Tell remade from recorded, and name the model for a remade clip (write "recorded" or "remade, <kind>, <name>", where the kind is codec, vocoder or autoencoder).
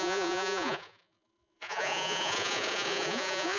remade, vocoder, Vocos